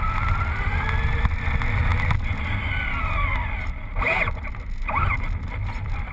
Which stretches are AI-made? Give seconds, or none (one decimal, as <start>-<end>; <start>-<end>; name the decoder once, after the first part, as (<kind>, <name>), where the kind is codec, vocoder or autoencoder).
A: none

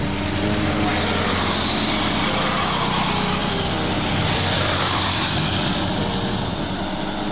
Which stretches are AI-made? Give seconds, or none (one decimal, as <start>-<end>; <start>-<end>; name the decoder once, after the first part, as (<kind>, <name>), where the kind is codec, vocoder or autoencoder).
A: 3.4-6.8 (vocoder, BigVGAN v2)

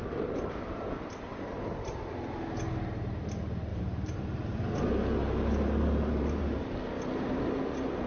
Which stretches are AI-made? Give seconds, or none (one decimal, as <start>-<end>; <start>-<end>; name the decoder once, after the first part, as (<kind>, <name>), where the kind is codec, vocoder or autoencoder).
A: 1.3-2.1 (vocoder, BigVGAN v2); 3.7-4.6; 5.2-6.4

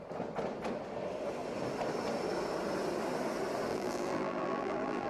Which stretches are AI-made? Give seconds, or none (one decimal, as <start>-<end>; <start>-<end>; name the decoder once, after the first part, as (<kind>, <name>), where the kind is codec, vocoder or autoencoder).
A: 3.7-5.1 (vocoder, BigVGAN v2)

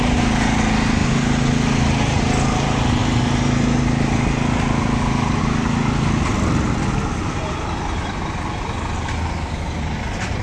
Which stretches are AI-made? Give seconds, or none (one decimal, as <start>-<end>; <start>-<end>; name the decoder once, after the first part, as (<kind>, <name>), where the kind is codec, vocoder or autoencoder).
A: none

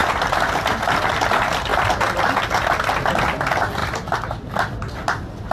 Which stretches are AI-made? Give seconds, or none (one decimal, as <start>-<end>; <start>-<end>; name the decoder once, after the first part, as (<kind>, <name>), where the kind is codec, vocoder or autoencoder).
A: 1.7-2.4 (vocoder, BigVGAN v2)

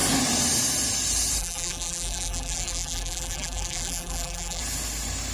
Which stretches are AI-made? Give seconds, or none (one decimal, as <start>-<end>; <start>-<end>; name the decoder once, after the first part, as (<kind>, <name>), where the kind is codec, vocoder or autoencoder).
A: 1.4-4.6 (vocoder, BigVGAN v2)